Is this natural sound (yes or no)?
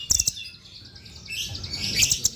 yes